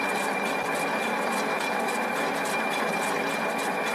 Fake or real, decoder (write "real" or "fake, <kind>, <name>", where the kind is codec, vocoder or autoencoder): real